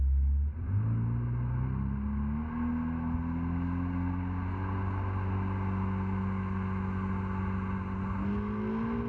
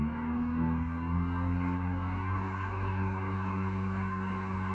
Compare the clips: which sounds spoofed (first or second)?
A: second